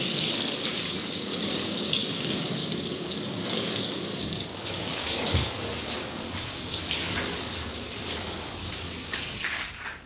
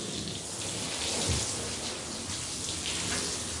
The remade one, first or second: first